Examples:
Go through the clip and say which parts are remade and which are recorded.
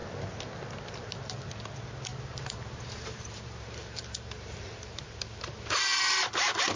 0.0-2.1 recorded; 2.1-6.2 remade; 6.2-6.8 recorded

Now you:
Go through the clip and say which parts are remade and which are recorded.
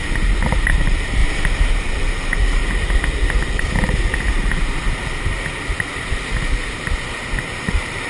0.0-2.6 remade; 2.6-6.8 recorded; 6.8-8.1 remade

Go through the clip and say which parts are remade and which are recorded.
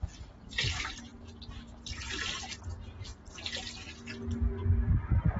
0.0-5.4 recorded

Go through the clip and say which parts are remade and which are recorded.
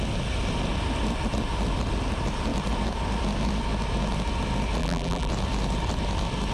0.0-4.8 recorded; 4.8-5.3 remade; 5.3-6.5 recorded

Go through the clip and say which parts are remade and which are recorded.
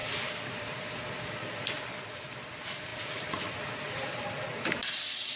0.0-5.4 remade